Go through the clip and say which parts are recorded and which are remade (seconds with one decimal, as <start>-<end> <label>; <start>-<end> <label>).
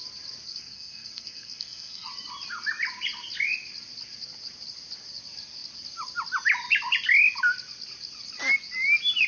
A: 0.0-0.5 recorded; 0.5-2.1 remade; 2.1-9.3 recorded